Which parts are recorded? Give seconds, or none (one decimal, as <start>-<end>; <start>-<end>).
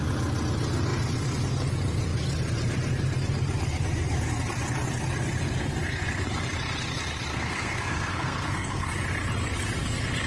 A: 0.0-7.3; 8.9-10.3